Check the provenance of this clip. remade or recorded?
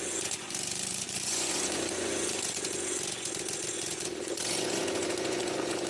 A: remade